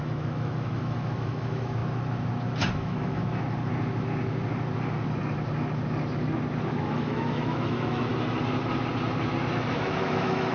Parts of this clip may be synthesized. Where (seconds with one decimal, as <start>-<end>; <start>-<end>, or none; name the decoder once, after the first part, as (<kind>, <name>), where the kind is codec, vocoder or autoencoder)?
0.0-1.8 (autoencoder, DAC-VAE); 2.7-3.2; 6.7-8.1; 9.7-10.5